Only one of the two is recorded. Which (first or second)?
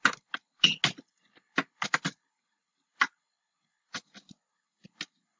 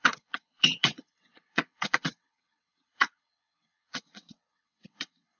first